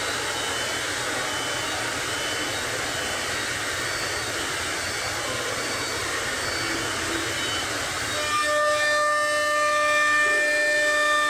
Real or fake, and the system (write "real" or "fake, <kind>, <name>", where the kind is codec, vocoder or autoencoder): real